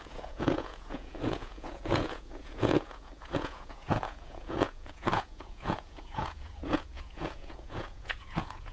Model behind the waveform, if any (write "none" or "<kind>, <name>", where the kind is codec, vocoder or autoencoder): vocoder, Vocos